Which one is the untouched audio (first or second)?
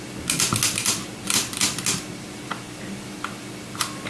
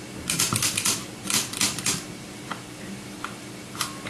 first